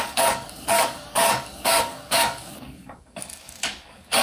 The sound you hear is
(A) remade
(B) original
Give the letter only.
A